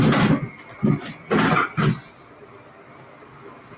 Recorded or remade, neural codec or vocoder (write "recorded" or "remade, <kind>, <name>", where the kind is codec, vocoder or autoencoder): recorded